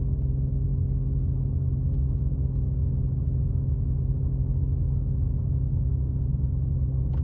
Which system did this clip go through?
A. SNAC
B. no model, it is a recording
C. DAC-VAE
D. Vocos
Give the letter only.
B